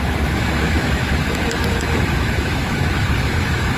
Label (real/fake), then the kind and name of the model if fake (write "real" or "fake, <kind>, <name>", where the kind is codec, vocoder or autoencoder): fake, autoencoder, DAC-VAE